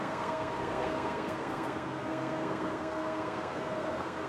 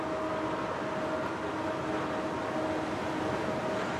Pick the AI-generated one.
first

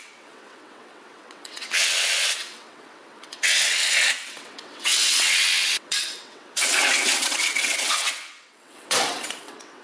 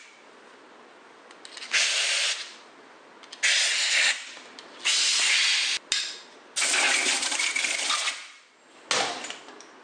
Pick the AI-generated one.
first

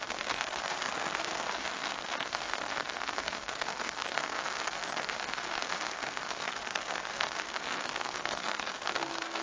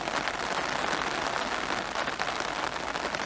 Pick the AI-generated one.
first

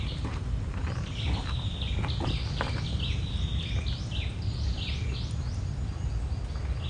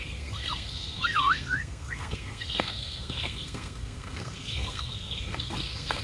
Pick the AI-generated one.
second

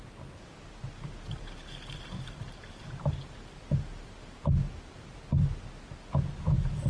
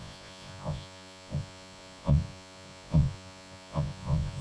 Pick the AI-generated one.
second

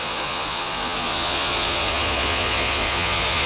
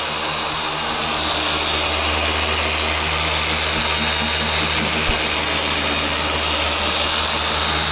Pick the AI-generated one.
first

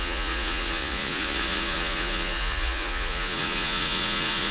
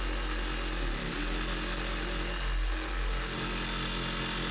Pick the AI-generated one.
first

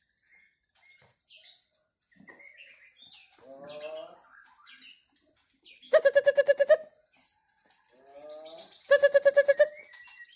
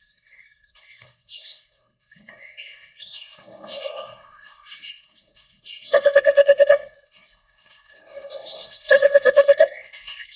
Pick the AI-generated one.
second